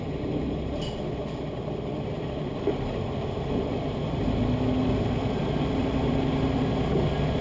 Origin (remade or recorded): recorded